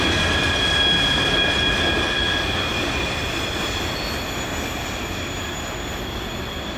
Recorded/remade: recorded